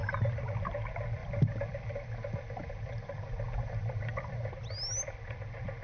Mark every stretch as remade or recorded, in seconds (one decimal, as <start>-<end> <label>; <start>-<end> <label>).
0.0-0.6 remade; 0.6-1.2 recorded; 1.2-4.5 remade; 4.5-5.8 recorded